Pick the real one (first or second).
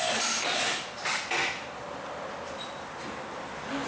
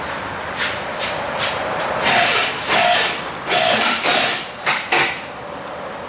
first